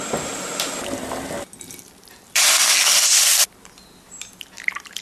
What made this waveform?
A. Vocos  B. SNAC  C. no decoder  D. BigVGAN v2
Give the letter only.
C